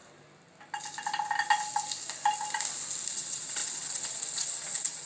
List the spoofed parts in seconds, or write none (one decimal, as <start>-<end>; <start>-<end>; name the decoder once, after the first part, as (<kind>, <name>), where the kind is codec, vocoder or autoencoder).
3.1-5.1 (vocoder, WaveNeXt)